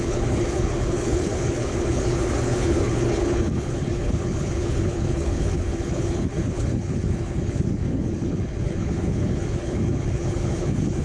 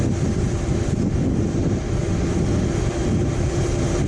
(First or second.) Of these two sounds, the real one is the second